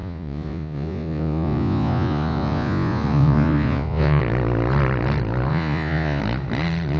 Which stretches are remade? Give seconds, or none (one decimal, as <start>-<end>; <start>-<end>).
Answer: 0.0-4.2; 5.5-6.2